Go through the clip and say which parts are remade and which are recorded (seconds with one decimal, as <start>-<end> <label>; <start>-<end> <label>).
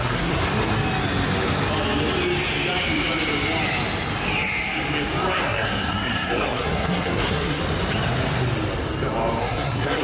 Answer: 0.0-0.4 remade; 0.4-5.4 recorded; 5.4-7.6 remade; 7.6-9.4 recorded; 9.4-10.0 remade